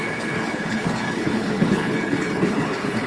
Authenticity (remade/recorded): remade